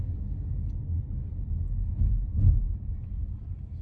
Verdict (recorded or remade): recorded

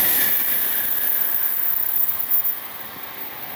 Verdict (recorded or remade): recorded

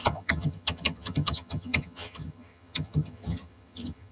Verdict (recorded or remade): remade